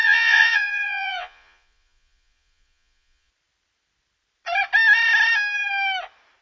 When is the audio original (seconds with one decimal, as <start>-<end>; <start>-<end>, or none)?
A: 3.3-6.4